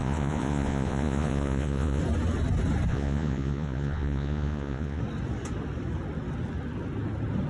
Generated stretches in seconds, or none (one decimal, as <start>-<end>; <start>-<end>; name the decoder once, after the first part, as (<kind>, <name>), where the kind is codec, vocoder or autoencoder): 0.0-2.0 (vocoder, Vocos); 2.9-5.0